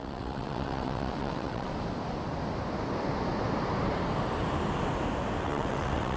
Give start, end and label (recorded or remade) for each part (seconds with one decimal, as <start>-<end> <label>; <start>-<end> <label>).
0.0-1.7 remade; 1.7-5.4 recorded; 5.4-6.2 remade